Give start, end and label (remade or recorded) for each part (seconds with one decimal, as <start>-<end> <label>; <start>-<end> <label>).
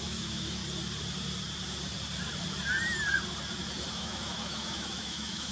0.0-0.6 remade; 0.6-3.9 recorded; 3.9-5.5 remade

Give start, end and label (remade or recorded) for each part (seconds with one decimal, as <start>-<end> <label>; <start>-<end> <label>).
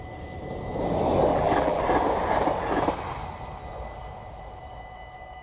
0.0-1.3 recorded; 1.3-1.8 remade; 1.8-5.4 recorded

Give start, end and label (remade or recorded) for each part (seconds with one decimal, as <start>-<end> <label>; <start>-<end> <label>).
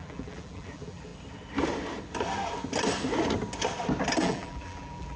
0.0-1.1 remade; 1.1-4.2 recorded; 4.2-5.2 remade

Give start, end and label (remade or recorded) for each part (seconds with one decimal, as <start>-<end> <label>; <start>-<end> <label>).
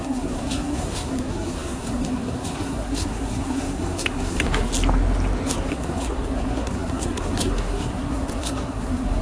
0.0-4.7 remade; 4.7-5.5 recorded; 5.5-9.2 remade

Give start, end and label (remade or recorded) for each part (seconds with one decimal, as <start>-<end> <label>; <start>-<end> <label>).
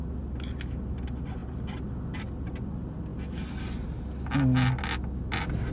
0.0-5.7 recorded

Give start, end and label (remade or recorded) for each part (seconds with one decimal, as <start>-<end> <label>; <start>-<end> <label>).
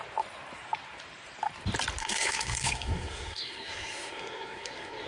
0.0-2.0 recorded; 2.0-5.1 remade